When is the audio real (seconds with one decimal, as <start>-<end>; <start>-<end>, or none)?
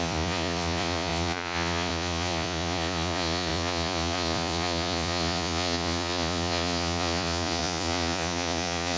none